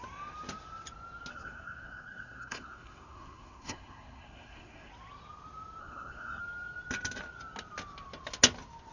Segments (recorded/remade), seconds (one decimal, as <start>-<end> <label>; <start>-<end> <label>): 0.0-1.3 recorded; 1.3-4.9 remade; 4.9-5.8 recorded; 5.8-6.4 remade; 6.4-8.9 recorded